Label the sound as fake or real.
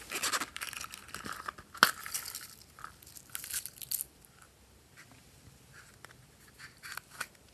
real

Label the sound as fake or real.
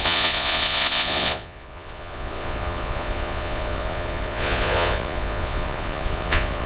fake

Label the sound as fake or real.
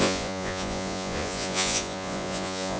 fake